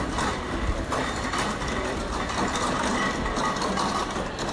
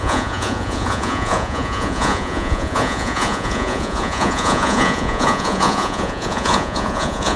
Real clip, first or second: first